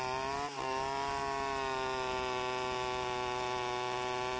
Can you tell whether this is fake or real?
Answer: real